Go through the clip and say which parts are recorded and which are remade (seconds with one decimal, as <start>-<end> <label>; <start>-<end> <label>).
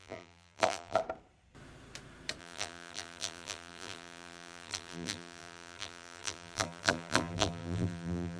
0.0-1.0 remade; 1.0-2.4 recorded; 2.4-8.4 remade